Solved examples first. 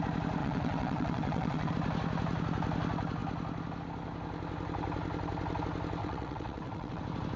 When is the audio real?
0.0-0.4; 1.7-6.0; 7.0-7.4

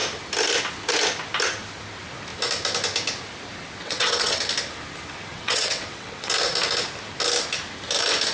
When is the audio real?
0.0-3.8; 4.4-5.3; 6.3-8.3

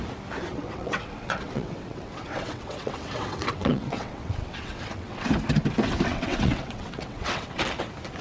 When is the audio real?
0.0-0.5; 5.3-6.1; 7.6-8.2